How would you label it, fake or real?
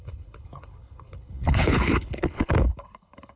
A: fake